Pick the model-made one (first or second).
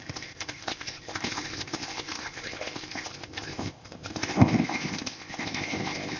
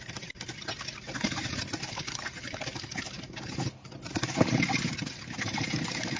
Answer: first